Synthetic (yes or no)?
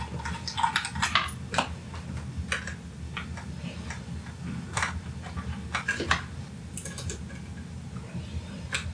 no